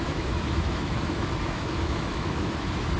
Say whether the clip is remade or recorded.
remade